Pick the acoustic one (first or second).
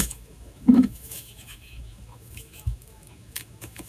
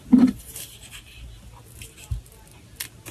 second